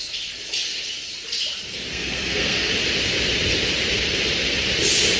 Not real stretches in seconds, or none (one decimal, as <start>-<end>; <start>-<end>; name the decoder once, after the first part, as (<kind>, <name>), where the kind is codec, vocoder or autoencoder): 1.9-2.7 (codec, SNAC)